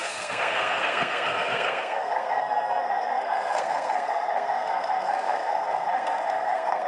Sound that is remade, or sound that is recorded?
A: remade